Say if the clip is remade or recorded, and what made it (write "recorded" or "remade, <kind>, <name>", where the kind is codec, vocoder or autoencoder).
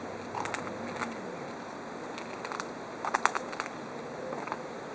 recorded